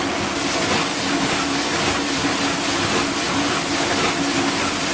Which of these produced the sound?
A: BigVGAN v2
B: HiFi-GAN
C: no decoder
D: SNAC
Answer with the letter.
C